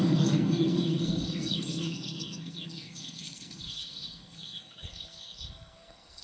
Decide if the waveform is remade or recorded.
remade